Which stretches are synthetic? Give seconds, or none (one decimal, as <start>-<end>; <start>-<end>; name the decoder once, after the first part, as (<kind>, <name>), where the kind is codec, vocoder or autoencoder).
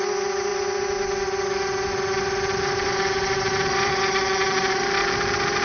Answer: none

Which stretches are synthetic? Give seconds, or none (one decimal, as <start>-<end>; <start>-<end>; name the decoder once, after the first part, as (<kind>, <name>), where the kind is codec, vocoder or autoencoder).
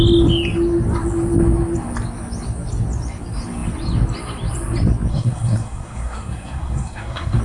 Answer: 5.1-7.4 (codec, SNAC)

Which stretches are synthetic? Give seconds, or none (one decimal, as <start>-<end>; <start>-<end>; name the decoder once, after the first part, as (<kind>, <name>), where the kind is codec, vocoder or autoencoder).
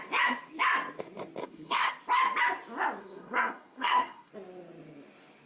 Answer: 1.4-1.9 (codec, SNAC); 3.0-4.3